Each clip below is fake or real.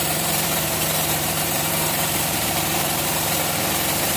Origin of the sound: fake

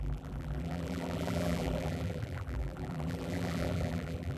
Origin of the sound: fake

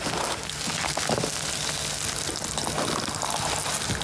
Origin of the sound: real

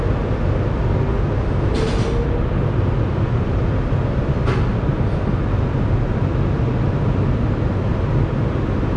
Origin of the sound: real